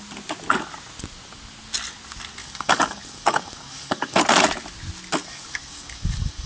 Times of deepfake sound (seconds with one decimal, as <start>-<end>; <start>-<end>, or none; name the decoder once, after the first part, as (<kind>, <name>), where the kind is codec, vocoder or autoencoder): 2.4-4.2 (codec, DAC); 5.2-6.5